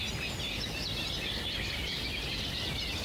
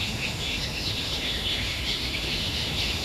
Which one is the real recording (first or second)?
first